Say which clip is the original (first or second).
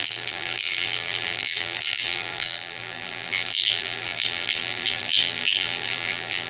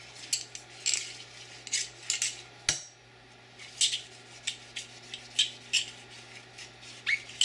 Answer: second